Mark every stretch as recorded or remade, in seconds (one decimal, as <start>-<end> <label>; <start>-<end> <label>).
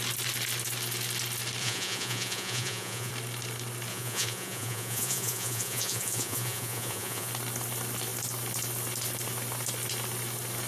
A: 0.0-1.6 recorded; 1.6-3.1 remade; 3.1-3.9 recorded; 3.9-7.3 remade; 7.3-10.7 recorded